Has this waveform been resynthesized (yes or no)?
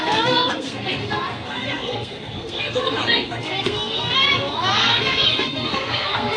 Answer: yes